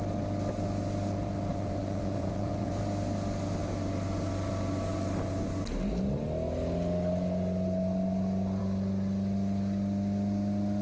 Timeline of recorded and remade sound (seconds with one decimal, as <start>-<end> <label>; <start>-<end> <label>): 0.0-1.5 recorded; 1.5-2.8 remade; 2.8-10.8 recorded